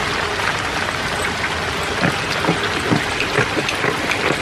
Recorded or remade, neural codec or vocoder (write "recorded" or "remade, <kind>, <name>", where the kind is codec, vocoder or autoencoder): recorded